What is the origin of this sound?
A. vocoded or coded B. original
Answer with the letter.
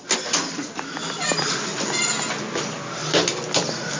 B